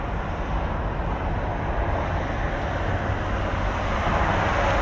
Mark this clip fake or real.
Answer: real